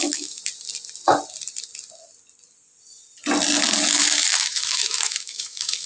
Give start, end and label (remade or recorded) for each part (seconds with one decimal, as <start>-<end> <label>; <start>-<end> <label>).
0.0-0.4 remade; 0.4-3.9 recorded; 3.9-5.9 remade